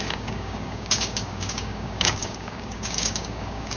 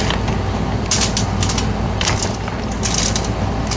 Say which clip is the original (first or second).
second